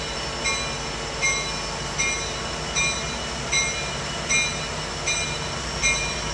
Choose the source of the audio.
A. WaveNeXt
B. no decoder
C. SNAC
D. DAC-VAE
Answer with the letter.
B